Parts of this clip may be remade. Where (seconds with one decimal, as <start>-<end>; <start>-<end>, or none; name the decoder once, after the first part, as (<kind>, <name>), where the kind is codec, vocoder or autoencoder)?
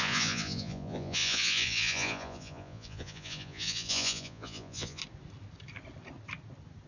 0.0-5.0 (vocoder, Vocos)